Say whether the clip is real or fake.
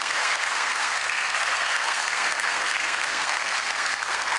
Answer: fake